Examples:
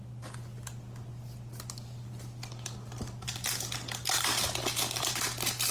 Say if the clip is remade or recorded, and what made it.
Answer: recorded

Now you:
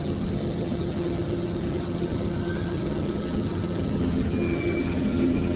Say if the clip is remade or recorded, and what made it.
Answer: remade, vocoder, HiFi-GAN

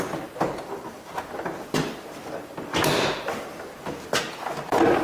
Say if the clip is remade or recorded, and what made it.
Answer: recorded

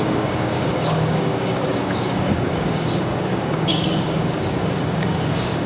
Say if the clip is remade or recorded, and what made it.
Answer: remade, codec, DAC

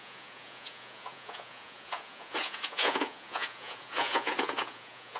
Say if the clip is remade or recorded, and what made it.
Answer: remade, vocoder, Vocos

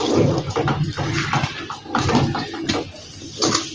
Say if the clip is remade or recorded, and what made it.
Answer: recorded